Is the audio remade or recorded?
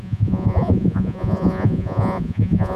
remade